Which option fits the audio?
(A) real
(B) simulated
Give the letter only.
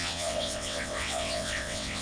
B